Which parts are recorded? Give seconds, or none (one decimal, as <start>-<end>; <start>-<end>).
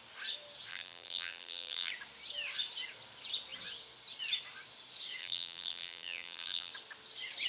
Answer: 0.0-0.7; 1.9-5.2; 6.7-7.5